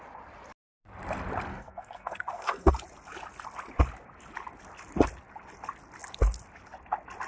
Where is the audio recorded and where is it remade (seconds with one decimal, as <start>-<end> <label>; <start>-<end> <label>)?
0.0-1.5 recorded; 1.5-2.7 remade; 2.7-7.3 recorded